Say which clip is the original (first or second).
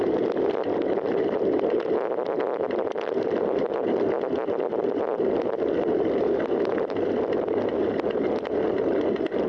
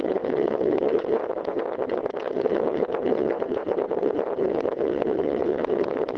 first